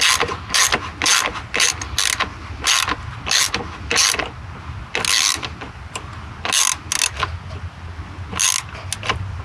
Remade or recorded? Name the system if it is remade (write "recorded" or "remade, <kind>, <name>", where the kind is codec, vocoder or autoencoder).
recorded